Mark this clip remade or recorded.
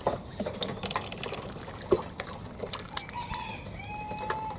recorded